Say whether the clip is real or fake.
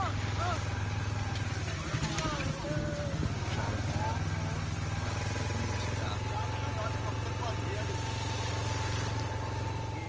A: real